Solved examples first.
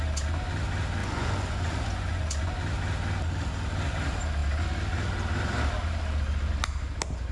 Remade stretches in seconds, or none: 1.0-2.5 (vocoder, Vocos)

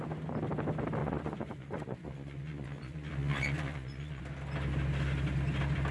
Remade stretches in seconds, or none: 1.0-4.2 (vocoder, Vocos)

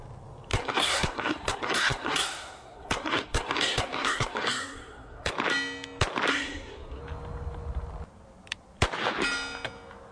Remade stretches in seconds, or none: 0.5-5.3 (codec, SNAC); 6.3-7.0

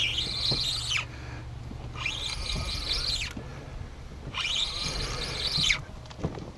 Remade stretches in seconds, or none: none

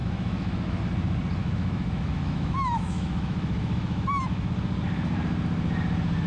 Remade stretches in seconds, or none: 0.0-0.8 (autoencoder, DAC-VAE); 1.4-4.5